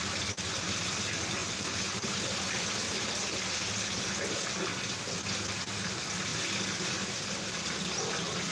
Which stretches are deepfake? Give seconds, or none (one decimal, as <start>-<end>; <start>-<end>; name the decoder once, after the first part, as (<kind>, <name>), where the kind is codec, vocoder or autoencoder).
1.4-2.7 (vocoder, BigVGAN v2); 6.3-7.1